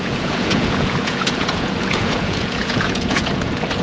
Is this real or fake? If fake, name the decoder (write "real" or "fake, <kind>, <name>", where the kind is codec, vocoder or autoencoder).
fake, vocoder, Vocos